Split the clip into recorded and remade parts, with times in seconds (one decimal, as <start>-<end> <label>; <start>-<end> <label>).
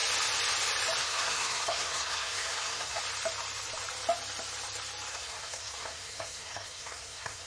0.0-1.0 recorded; 1.0-3.0 remade; 3.0-5.1 recorded; 5.1-7.5 remade